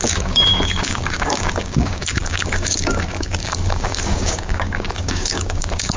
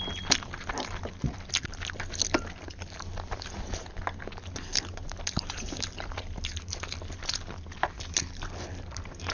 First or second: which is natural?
second